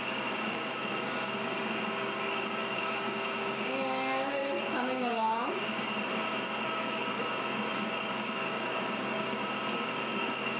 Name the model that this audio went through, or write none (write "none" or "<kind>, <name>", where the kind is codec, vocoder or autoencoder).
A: codec, DAC